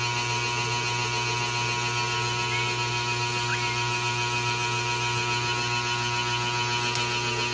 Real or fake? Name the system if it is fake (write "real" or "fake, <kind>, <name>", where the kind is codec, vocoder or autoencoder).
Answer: real